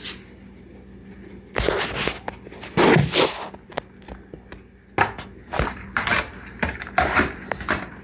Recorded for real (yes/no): yes